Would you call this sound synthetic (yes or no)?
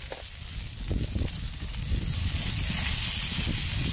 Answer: no